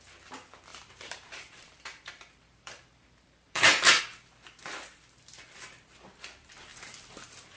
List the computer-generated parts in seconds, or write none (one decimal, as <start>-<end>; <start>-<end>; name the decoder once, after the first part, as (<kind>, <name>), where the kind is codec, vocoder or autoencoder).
0.7-4.0 (vocoder, BigVGAN v2)